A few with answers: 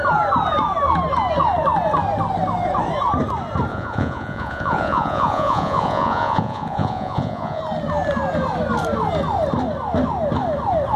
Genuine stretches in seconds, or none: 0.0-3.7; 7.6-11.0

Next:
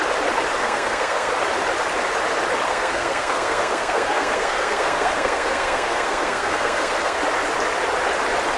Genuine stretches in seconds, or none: 0.0-0.6; 1.3-2.7; 7.2-8.6

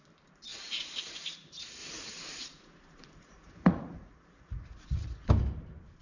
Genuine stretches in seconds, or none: 0.0-1.8; 5.3-6.0

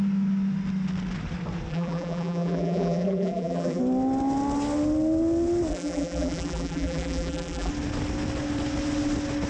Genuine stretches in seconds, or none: 0.0-1.7; 3.8-5.7; 7.7-9.5

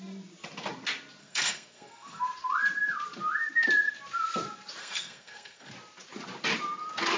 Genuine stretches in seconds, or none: 0.0-1.2; 2.2-4.8; 5.7-7.2

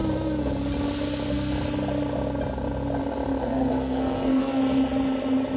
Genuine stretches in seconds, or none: 0.0-3.4; 4.6-5.6

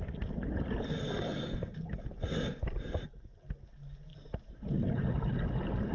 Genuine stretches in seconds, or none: 0.0-5.9